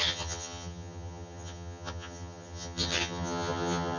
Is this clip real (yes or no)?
no